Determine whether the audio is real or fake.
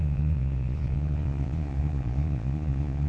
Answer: fake